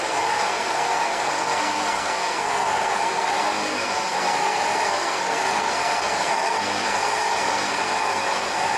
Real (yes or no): no